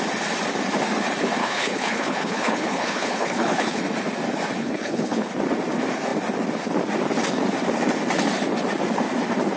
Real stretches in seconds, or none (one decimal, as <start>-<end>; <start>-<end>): 0.0-1.4; 3.8-4.6; 5.3-9.6